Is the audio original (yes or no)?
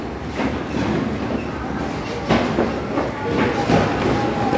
yes